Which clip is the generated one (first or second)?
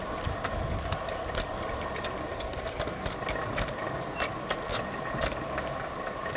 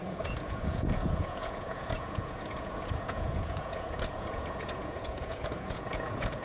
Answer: second